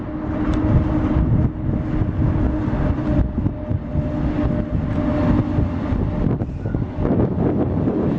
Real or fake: real